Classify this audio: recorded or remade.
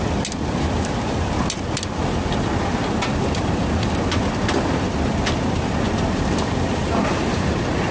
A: recorded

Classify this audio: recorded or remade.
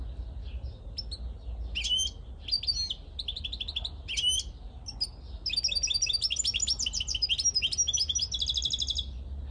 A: recorded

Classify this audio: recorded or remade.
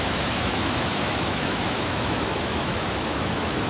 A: remade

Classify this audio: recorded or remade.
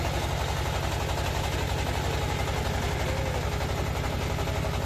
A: recorded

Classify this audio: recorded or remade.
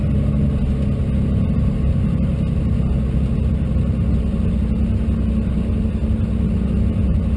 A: recorded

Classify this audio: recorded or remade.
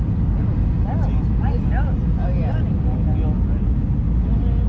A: recorded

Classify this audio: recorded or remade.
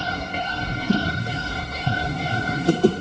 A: remade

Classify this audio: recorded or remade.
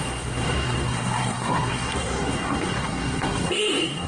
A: remade